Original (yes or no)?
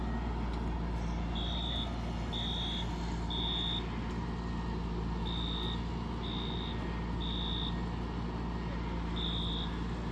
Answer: yes